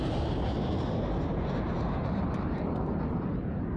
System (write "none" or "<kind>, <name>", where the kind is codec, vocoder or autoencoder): vocoder, BigVGAN v2